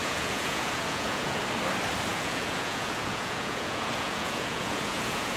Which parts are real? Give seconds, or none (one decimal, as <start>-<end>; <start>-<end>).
1.4-2.1